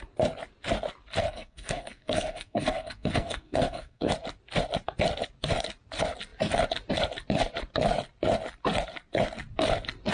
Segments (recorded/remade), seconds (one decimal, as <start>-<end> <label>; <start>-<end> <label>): 0.0-1.2 recorded; 1.2-4.1 remade; 4.1-10.1 recorded